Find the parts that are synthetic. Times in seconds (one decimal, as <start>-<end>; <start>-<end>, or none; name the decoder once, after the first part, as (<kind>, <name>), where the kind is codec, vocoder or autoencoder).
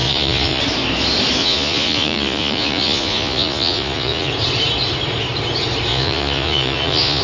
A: 0.0-0.6 (vocoder, Vocos); 1.4-4.3; 5.9-7.2